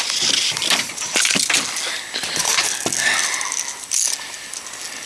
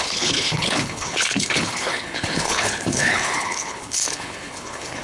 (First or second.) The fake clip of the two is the second